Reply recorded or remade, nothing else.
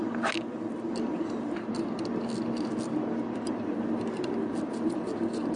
recorded